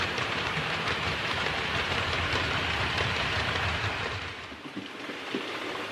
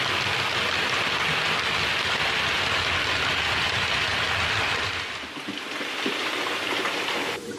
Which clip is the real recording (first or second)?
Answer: second